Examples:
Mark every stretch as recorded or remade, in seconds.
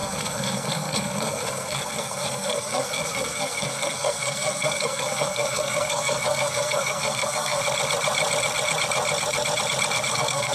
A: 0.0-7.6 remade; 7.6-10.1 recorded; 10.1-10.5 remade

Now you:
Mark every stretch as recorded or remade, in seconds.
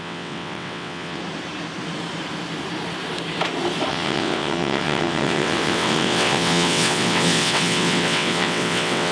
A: 0.0-1.2 remade; 1.2-3.9 recorded; 3.9-9.1 remade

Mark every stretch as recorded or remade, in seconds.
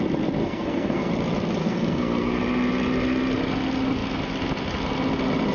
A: 0.0-0.4 recorded; 0.4-1.1 remade; 1.1-1.6 recorded; 1.6-2.4 remade; 2.4-5.5 recorded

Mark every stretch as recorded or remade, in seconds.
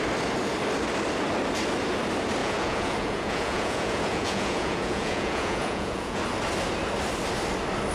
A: 0.0-2.4 recorded; 2.4-6.2 remade; 6.2-7.9 recorded